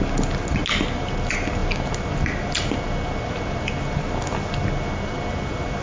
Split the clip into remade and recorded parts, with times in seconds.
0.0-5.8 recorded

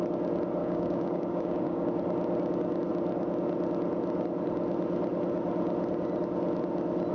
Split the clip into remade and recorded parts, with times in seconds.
0.0-0.6 recorded; 0.6-1.9 remade; 1.9-7.1 recorded

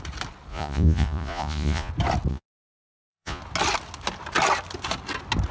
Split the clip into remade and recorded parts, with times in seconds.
0.0-0.5 recorded; 0.5-1.9 remade; 1.9-2.3 recorded; 2.3-3.4 remade; 3.4-5.5 recorded

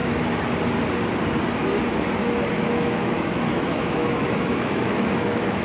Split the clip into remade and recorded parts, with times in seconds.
0.0-2.5 recorded; 2.5-5.6 remade